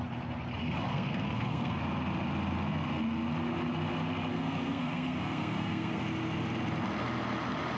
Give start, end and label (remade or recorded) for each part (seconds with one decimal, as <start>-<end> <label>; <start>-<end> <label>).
0.0-0.9 recorded; 0.9-1.8 remade; 1.8-4.3 recorded; 4.3-6.0 remade; 6.0-7.8 recorded